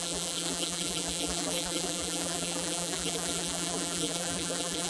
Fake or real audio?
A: fake